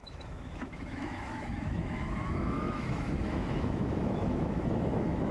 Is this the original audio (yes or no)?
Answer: no